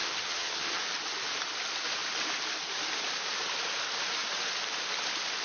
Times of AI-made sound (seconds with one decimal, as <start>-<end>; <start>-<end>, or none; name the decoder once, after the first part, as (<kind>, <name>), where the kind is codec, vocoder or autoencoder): 0.0-0.8 (vocoder, HiFi-GAN)